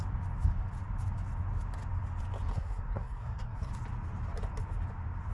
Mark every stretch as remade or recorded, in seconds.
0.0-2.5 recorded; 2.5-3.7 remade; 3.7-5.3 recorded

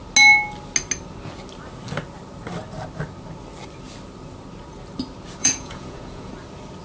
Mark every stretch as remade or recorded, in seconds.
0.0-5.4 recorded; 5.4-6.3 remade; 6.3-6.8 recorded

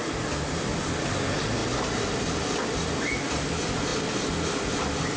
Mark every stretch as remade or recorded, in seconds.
0.0-5.2 recorded